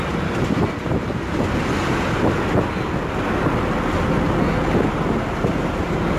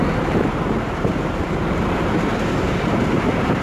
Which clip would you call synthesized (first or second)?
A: second